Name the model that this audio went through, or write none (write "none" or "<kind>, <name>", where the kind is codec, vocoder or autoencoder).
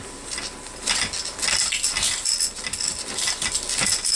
none